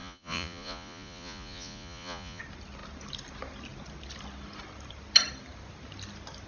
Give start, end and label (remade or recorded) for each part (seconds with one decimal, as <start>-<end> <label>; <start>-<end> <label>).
0.0-2.4 remade; 2.4-6.5 recorded

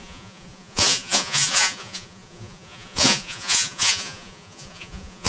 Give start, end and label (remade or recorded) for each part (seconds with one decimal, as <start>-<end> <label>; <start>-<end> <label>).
0.0-5.3 remade

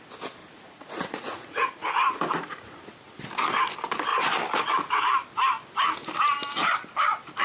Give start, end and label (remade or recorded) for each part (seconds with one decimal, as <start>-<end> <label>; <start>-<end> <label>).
0.0-0.4 recorded; 0.4-2.9 remade; 2.9-7.4 recorded

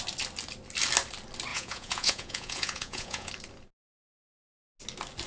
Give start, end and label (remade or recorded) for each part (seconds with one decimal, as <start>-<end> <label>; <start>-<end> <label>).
0.0-1.5 recorded; 1.5-3.3 remade; 3.3-5.3 recorded